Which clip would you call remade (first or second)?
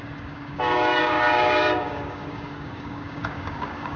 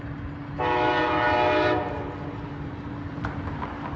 first